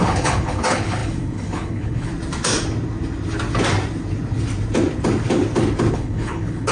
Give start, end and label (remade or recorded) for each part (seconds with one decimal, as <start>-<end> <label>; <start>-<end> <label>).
0.0-2.1 remade; 2.1-5.9 recorded; 5.9-6.7 remade